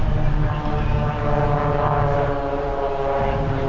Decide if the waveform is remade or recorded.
recorded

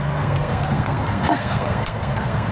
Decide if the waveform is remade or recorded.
remade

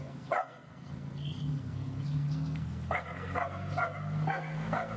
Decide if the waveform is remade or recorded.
remade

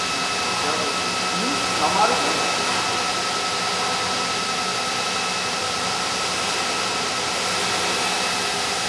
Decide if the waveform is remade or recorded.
recorded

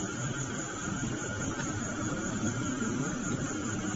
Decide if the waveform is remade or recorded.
recorded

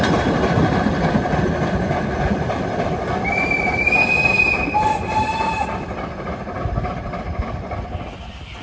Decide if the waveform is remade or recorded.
remade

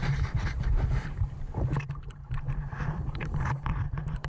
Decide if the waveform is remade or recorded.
remade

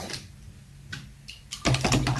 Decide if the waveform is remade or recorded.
recorded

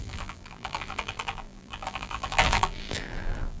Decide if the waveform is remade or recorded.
remade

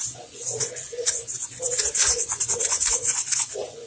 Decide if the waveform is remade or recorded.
remade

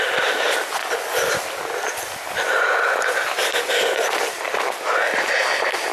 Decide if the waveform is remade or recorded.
recorded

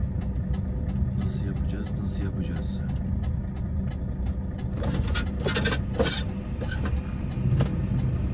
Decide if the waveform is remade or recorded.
recorded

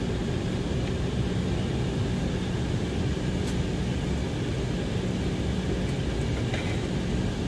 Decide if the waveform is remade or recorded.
recorded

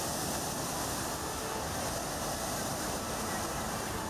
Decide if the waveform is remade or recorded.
recorded